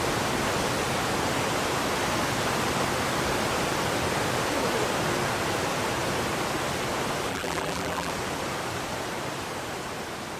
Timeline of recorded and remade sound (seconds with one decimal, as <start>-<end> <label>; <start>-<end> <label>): 0.0-7.3 recorded; 7.3-8.1 remade; 8.1-10.4 recorded